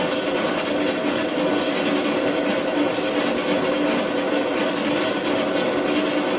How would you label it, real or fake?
real